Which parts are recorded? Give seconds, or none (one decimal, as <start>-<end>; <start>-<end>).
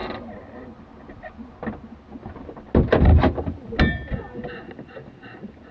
0.8-3.1; 3.8-5.7